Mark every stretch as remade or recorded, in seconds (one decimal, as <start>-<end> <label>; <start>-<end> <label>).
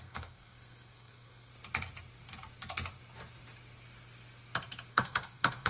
0.0-1.5 remade; 1.5-4.9 recorded; 4.9-5.7 remade